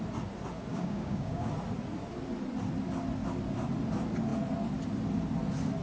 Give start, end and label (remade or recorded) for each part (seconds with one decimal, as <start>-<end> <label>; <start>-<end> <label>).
0.0-0.7 recorded; 0.7-1.5 remade; 1.5-5.8 recorded